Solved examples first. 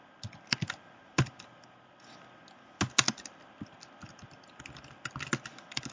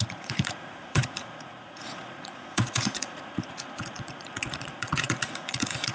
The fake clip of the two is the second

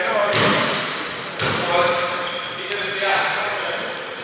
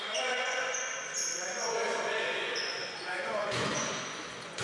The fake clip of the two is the second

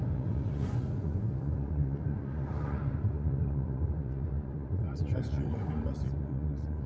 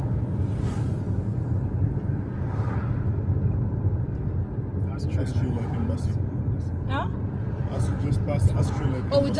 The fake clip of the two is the first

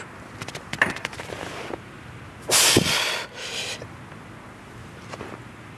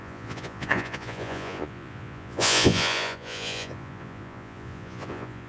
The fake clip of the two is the second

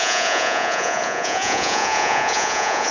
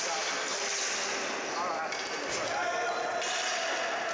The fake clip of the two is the first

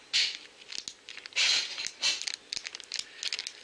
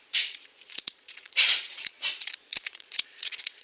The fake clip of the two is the second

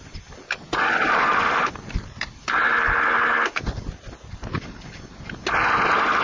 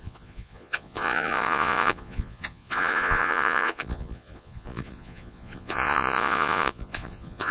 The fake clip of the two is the second